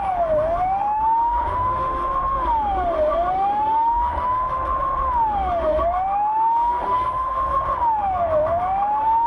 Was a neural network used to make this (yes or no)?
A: yes